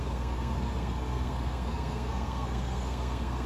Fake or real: fake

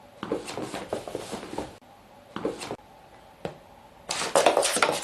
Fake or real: real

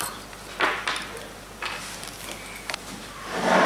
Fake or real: real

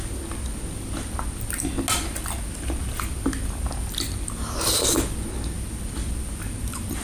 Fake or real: real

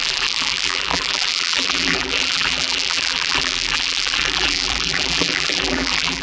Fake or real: fake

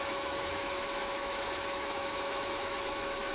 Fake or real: fake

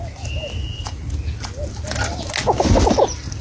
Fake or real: real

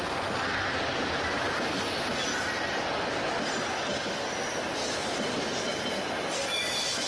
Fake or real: real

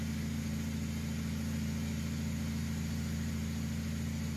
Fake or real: real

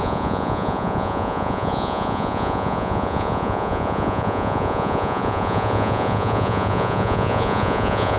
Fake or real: fake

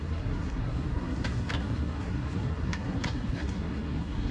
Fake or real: fake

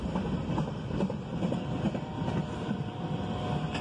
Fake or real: real